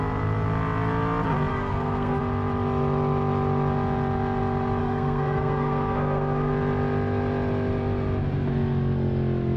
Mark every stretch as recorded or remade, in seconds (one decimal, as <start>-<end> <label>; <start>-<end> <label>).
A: 0.0-1.5 recorded; 1.5-2.2 remade; 2.2-4.8 recorded; 4.8-6.5 remade; 6.5-9.6 recorded